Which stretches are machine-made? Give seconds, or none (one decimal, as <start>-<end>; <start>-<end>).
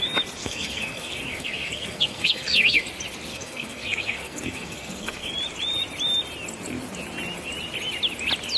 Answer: 0.4-2.8; 3.3-5.3